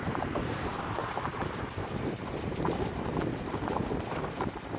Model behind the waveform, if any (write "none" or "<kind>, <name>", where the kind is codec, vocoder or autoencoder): vocoder, BigVGAN v2